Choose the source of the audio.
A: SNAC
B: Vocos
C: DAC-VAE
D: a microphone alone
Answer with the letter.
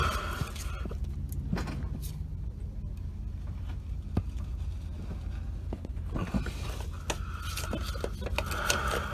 D